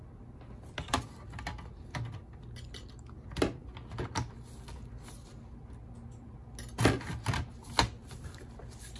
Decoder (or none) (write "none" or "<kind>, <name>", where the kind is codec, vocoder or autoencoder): none